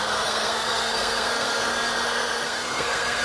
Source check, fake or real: fake